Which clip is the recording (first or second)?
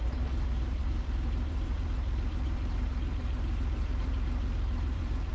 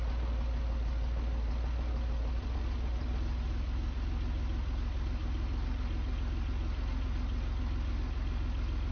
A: second